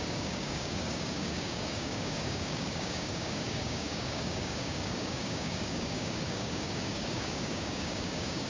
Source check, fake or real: fake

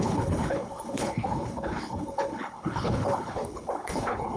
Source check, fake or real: fake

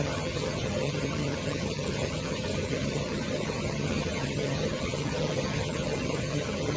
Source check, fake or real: fake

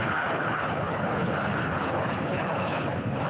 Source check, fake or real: fake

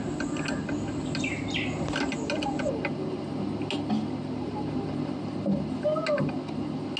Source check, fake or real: real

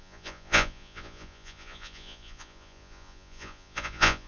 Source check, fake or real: fake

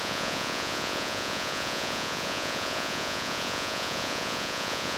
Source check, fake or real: fake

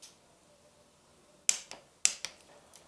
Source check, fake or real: real